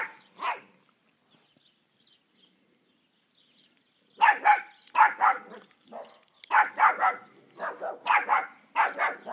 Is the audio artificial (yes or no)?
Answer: no